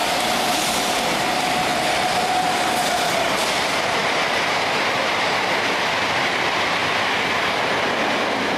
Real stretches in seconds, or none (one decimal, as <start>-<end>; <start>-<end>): 1.7-2.3; 6.8-8.2